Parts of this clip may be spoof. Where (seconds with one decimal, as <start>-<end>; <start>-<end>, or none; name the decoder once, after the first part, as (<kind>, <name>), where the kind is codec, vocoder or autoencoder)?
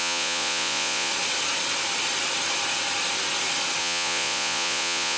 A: 0.0-1.1 (vocoder, Vocos); 3.8-5.2